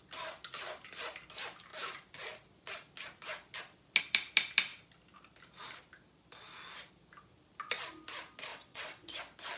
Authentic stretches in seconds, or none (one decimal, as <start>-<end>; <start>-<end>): 0.0-8.5; 9.2-9.6